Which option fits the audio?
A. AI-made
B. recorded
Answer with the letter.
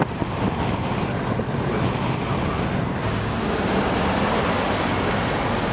B